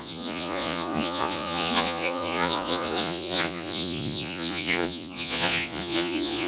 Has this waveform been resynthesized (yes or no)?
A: yes